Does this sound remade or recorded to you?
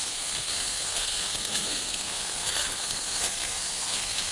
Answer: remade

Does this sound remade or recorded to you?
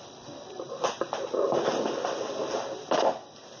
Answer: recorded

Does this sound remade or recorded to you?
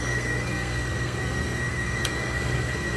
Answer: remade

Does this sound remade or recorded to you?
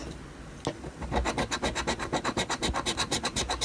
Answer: recorded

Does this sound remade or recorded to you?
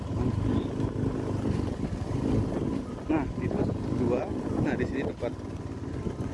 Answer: recorded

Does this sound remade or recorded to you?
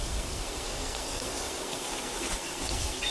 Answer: remade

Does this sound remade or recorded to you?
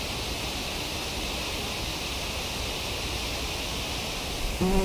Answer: recorded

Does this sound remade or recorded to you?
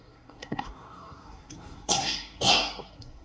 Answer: remade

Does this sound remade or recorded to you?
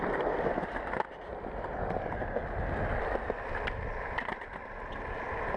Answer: recorded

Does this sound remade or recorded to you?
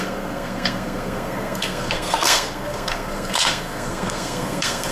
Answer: remade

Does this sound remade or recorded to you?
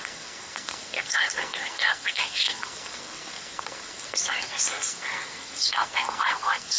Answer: remade